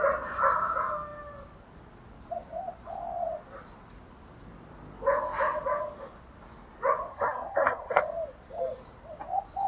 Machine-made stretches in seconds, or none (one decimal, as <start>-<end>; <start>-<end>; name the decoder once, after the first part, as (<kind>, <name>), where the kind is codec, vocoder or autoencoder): 7.1-8.0 (codec, SNAC)